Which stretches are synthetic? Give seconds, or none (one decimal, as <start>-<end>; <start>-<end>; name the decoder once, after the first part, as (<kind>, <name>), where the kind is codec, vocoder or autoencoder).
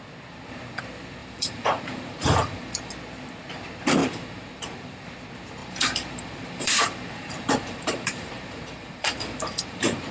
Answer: 1.2-2.9 (vocoder, BigVGAN v2); 4.0-5.0; 5.6-10.1